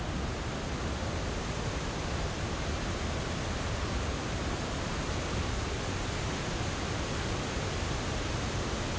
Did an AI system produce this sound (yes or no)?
no